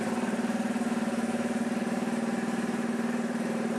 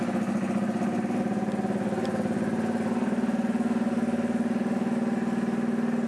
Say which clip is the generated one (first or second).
first